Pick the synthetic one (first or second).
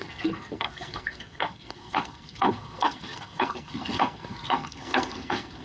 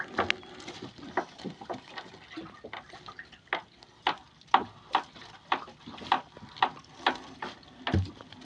first